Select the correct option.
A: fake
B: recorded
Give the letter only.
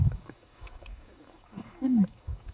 A